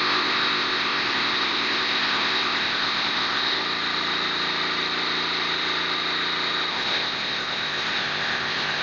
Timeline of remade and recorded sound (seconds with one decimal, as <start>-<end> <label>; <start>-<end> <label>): 0.0-3.6 remade; 3.6-6.7 recorded; 6.7-8.8 remade